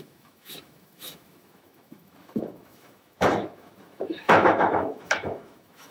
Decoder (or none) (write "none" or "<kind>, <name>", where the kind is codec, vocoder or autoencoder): autoencoder, DAC-VAE